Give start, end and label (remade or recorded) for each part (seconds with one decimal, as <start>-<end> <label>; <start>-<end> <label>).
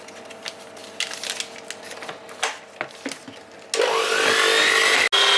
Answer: 0.0-5.4 recorded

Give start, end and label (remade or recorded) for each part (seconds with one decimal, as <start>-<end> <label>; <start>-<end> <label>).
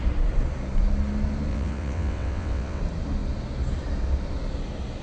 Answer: 0.0-1.5 recorded; 1.5-2.8 remade; 2.8-5.0 recorded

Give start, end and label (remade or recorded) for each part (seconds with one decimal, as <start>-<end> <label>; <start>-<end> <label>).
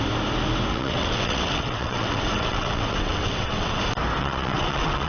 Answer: 0.0-0.7 recorded; 0.7-3.8 remade; 3.8-4.2 recorded; 4.2-5.1 remade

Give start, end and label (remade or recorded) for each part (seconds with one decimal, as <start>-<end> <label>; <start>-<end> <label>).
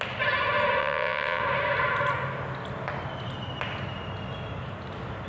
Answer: 0.0-0.8 recorded; 0.8-1.4 remade; 1.4-5.3 recorded